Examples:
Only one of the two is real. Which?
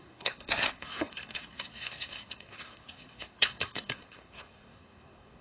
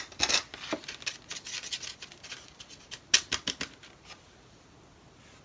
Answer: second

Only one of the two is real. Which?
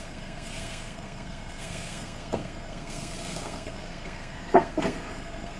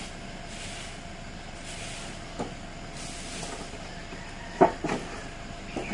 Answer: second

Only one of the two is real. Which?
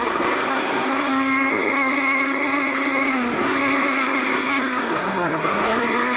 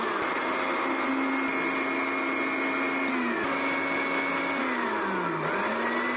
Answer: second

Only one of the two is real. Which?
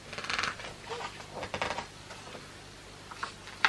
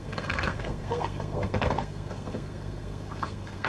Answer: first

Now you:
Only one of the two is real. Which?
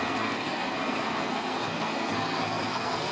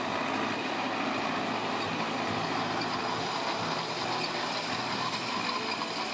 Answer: second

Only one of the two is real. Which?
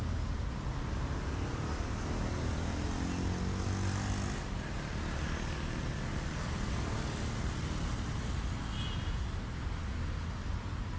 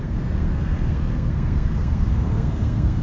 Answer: first